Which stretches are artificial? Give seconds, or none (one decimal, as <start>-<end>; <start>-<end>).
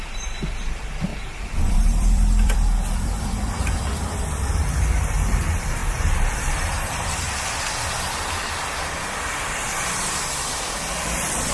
0.0-1.1; 1.8-11.5